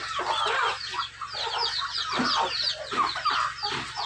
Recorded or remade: recorded